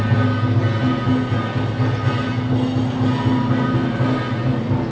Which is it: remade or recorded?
recorded